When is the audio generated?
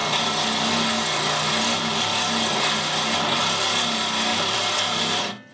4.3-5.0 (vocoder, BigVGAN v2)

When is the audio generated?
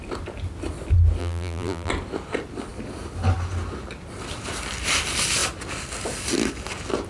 1.2-1.9 (vocoder, BigVGAN v2)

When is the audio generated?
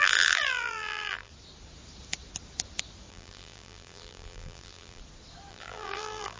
0.0-1.3 (vocoder, BigVGAN v2); 3.1-5.0; 5.5-6.4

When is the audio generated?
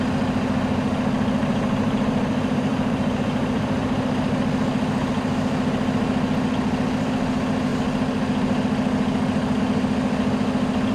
1.4-4.1 (vocoder, BigVGAN v2)